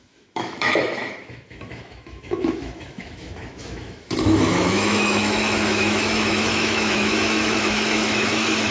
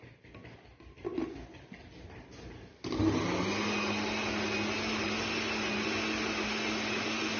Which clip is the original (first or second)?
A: second